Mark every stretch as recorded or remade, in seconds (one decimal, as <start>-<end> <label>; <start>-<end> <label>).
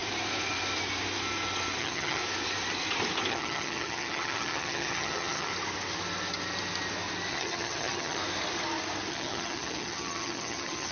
0.0-1.8 recorded; 1.8-2.2 remade; 2.2-3.3 recorded; 3.3-5.5 remade; 5.5-7.3 recorded; 7.3-8.2 remade; 8.2-9.1 recorded; 9.1-10.9 remade